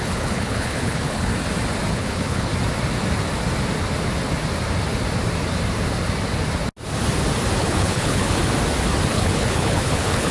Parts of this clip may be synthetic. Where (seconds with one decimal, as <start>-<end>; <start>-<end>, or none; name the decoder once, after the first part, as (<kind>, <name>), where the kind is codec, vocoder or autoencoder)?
0.0-1.3 (codec, HILCodec); 1.9-2.5; 7.6-8.4; 9.1-10.3